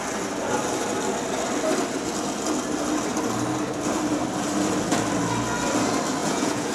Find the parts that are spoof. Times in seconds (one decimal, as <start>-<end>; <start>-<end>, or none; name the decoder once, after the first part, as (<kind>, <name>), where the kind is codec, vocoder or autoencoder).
6.2-6.7 (vocoder, Vocos)